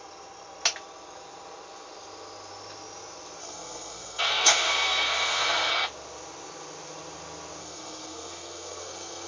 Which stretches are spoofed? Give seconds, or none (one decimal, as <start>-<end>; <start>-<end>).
3.4-5.7; 7.6-9.3